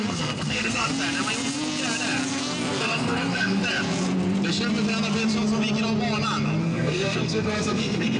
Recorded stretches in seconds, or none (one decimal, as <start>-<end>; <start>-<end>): 0.9-2.2; 3.6-6.6